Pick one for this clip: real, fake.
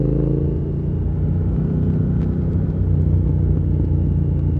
real